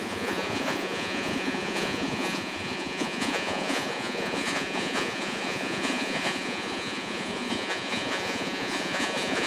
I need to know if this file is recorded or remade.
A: remade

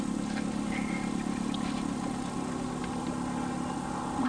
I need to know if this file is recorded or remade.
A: recorded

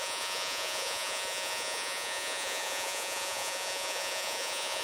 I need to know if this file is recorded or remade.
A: remade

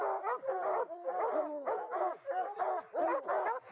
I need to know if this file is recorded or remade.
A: recorded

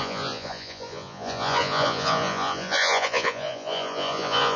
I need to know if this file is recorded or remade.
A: remade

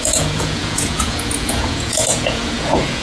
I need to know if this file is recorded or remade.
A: remade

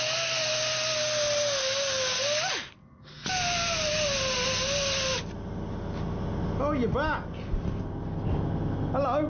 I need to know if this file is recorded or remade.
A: recorded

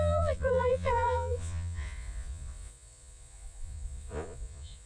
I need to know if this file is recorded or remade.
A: remade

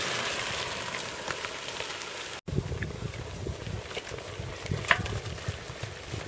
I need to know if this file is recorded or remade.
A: recorded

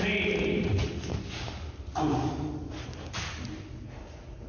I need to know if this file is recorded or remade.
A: recorded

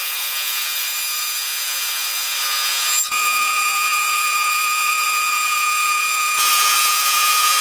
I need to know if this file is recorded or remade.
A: remade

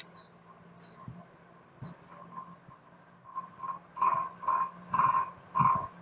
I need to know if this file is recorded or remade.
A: recorded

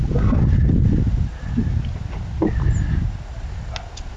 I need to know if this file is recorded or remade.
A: recorded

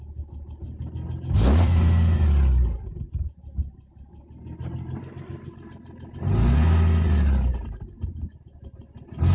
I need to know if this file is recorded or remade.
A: recorded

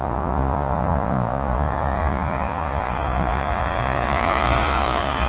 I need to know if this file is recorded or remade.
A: remade